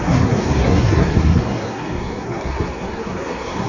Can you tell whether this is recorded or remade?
remade